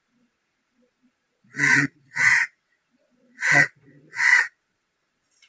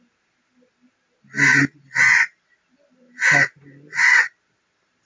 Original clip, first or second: second